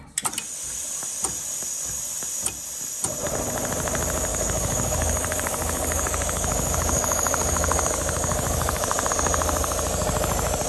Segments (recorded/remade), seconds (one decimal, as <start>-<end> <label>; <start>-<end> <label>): 0.0-4.3 recorded; 4.3-9.1 remade; 9.1-10.7 recorded